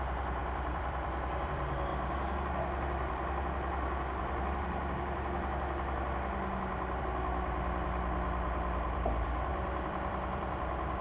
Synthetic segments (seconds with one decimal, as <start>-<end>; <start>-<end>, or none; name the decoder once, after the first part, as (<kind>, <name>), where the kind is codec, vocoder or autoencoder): 0.0-1.9 (vocoder, BigVGAN v2); 7.0-11.0